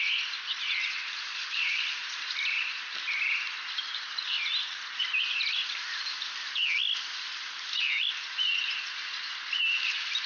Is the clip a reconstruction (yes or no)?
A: yes